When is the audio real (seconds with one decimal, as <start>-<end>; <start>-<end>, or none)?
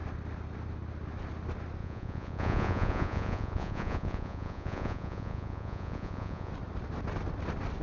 0.0-1.8; 6.5-7.8